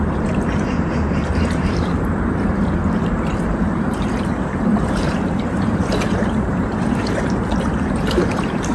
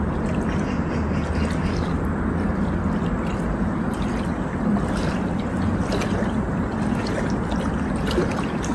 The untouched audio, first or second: second